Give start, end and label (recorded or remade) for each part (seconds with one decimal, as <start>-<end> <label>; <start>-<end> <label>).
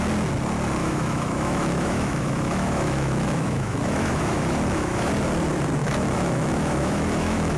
0.0-0.8 recorded; 0.8-5.1 remade; 5.1-5.8 recorded; 5.8-7.6 remade